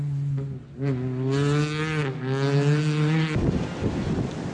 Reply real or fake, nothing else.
real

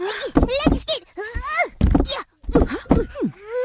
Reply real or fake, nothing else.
real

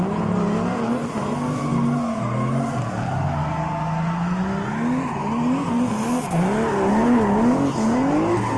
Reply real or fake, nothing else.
real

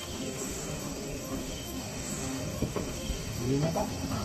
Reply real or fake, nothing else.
fake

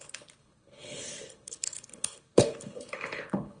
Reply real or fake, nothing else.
fake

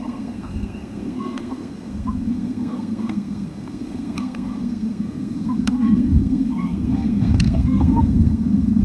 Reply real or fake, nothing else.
fake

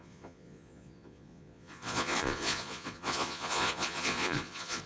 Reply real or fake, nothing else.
fake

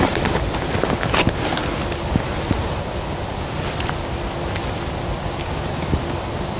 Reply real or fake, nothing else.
real